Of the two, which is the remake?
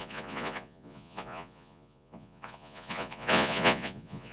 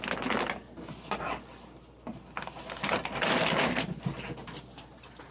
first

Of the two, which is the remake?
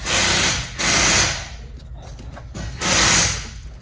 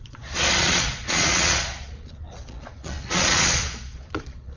second